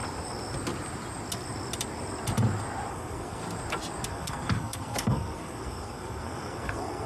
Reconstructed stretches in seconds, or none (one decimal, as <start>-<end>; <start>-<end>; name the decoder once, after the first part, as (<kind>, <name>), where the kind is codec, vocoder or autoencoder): 2.9-3.4 (codec, SNAC); 4.1-7.1